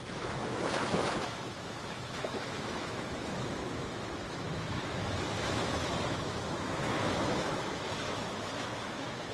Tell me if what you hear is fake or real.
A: fake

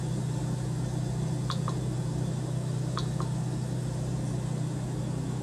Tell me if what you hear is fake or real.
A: real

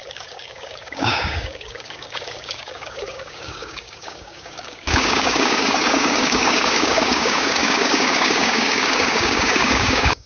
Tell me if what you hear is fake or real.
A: fake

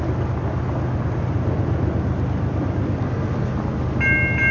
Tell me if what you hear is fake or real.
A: real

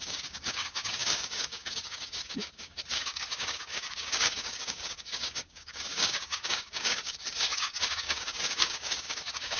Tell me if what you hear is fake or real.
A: fake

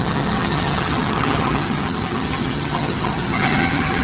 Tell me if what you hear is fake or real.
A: fake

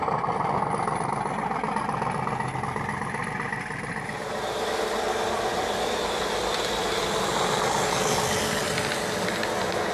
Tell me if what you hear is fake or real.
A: real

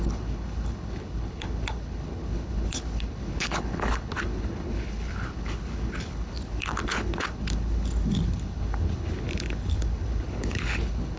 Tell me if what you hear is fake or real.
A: fake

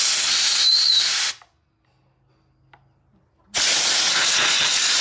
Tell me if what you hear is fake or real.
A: real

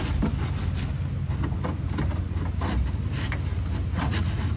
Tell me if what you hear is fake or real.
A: real